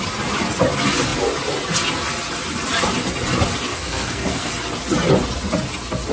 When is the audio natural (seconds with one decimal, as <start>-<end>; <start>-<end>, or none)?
0.0-3.7; 4.5-6.1